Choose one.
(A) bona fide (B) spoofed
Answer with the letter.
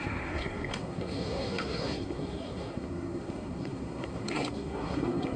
B